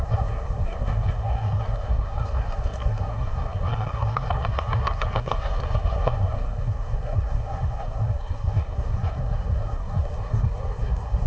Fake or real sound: fake